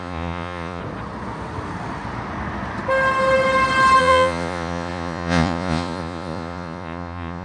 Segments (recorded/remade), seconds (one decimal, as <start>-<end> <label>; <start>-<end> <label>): 0.0-0.8 remade; 0.8-4.0 recorded; 4.0-7.4 remade